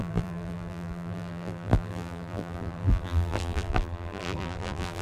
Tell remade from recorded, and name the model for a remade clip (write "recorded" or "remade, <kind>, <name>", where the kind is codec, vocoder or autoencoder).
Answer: remade, vocoder, BigVGAN v2